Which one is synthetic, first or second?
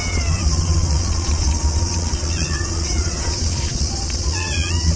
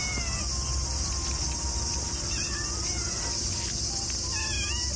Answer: first